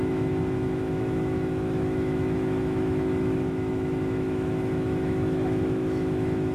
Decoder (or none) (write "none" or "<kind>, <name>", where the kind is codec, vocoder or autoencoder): autoencoder, DAC-VAE